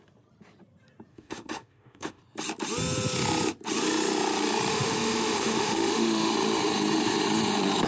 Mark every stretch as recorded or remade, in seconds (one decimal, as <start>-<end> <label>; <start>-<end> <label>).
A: 0.0-1.1 recorded; 1.1-2.2 remade; 2.2-4.7 recorded; 4.7-6.3 remade; 6.3-7.9 recorded